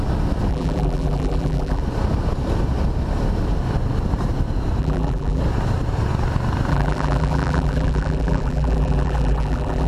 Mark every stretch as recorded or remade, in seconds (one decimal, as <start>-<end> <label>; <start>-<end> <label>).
0.0-0.5 recorded; 0.5-1.8 remade; 1.8-4.8 recorded; 4.8-5.4 remade; 5.4-6.7 recorded; 6.7-9.9 remade